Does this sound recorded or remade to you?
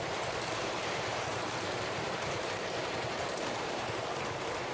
remade